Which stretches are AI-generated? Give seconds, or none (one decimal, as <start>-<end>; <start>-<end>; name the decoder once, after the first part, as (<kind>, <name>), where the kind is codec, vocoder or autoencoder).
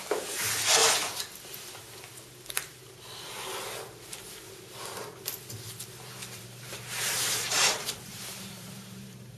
6.2-9.4 (vocoder, BigVGAN v2)